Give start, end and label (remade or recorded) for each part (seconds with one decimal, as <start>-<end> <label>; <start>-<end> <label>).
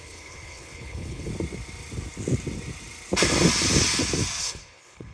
0.0-1.3 remade; 1.3-4.4 recorded; 4.4-5.1 remade